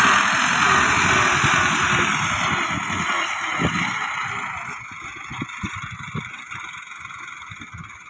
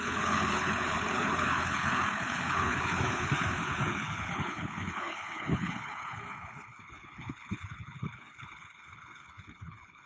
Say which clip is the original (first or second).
first